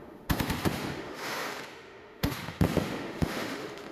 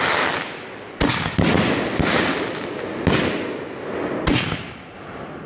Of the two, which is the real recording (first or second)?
second